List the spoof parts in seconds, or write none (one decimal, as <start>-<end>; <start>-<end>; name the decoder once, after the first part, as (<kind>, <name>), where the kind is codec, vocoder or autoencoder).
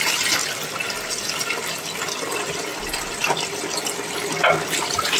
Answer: none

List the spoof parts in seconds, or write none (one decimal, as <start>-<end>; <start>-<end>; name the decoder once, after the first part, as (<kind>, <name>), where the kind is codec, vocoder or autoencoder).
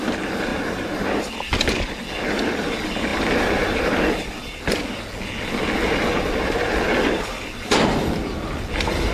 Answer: 0.5-1.3 (vocoder, BigVGAN v2)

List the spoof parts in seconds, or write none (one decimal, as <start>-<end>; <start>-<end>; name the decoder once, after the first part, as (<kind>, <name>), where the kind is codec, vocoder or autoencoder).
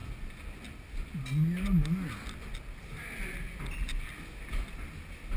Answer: none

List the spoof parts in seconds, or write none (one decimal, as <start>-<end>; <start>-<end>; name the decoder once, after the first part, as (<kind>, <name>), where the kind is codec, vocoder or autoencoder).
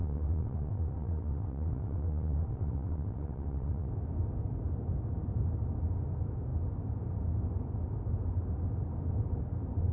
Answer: 0.0-3.9 (vocoder, WaveNeXt)